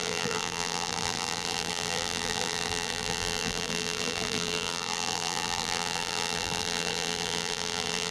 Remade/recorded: remade